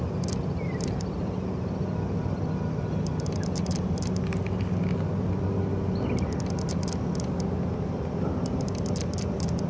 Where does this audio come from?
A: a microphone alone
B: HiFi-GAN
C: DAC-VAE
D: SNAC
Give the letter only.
A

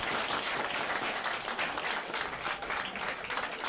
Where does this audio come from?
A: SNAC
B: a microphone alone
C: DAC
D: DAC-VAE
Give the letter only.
B